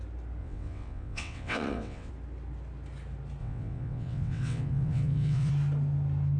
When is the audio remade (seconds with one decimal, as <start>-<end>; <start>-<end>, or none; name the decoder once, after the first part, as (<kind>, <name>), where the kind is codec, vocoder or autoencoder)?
0.4-2.1 (vocoder, WaveNeXt); 3.4-5.5